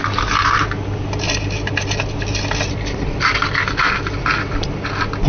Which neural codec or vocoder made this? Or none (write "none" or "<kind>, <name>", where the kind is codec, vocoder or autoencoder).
none